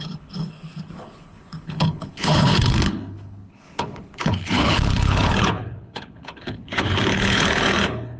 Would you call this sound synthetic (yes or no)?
yes